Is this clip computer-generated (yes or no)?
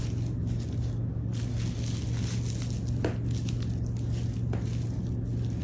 no